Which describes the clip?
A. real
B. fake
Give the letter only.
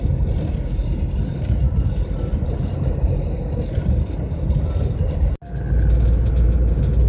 A